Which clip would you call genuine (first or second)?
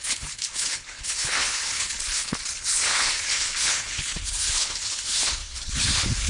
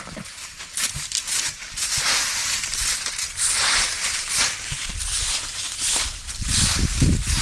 second